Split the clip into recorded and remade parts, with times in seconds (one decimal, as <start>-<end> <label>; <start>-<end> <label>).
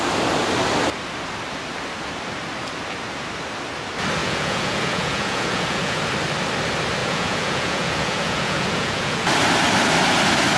0.0-4.2 recorded; 4.2-6.0 remade; 6.0-7.0 recorded; 7.0-9.3 remade; 9.3-10.6 recorded